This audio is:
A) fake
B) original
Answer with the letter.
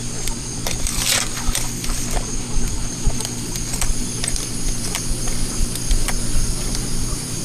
A